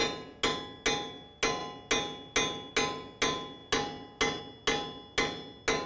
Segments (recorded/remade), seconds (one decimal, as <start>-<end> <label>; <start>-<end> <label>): 0.0-5.9 recorded